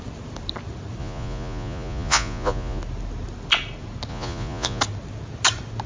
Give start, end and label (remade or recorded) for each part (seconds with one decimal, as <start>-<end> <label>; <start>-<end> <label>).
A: 0.0-1.0 recorded; 1.0-2.8 remade; 2.8-4.1 recorded; 4.1-4.8 remade; 4.8-5.9 recorded